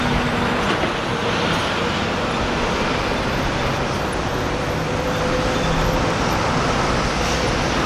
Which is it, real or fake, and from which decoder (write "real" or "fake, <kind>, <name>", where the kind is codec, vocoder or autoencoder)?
real